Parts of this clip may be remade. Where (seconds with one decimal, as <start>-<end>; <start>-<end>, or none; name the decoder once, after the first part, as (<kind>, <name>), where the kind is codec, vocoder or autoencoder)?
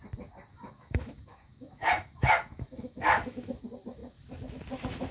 0.5-3.6 (autoencoder, DAC-VAE)